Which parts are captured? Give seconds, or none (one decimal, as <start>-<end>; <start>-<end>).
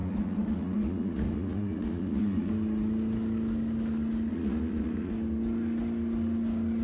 2.5-4.3; 5.1-6.8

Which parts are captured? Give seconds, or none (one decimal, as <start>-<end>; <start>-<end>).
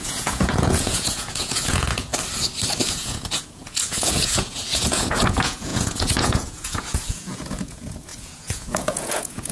2.1-2.8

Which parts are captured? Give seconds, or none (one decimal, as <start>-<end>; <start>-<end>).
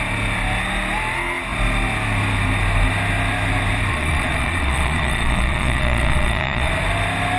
0.0-3.9; 6.7-7.4